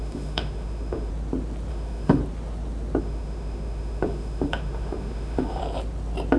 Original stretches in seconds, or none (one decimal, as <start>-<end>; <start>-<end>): 1.1-1.7; 2.2-3.0; 5.6-6.4